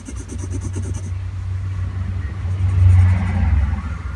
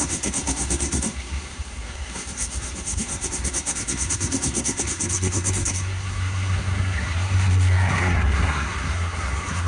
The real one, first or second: first